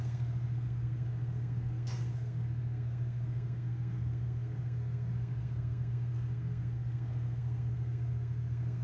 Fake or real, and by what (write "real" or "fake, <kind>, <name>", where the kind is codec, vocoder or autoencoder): fake, codec, SNAC